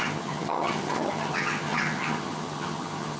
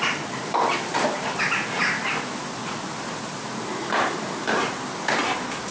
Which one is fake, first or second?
first